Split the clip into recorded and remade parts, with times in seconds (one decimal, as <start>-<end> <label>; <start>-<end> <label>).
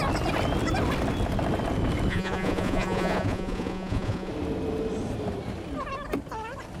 0.0-2.1 recorded; 2.1-4.3 remade; 4.3-6.8 recorded